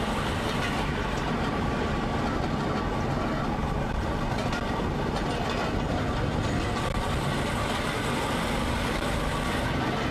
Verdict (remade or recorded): recorded